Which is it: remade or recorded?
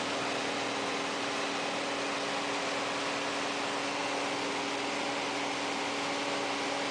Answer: recorded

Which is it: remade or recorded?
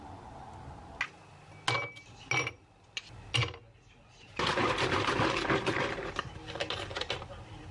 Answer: recorded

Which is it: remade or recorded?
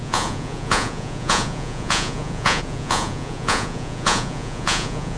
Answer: remade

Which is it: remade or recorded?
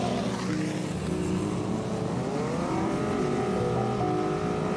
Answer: recorded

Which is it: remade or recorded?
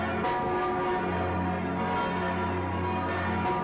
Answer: recorded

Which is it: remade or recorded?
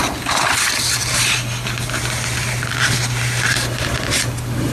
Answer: recorded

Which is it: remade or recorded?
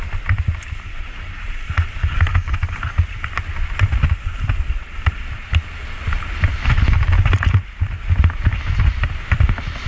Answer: recorded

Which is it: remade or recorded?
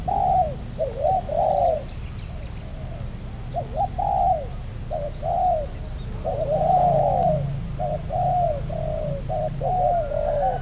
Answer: recorded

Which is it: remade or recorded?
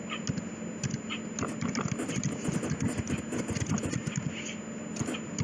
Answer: recorded